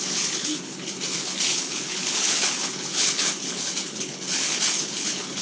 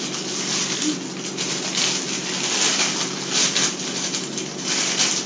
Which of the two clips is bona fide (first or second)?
second